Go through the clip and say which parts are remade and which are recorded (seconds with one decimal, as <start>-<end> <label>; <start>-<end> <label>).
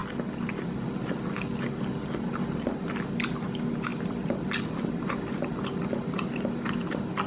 0.0-7.3 recorded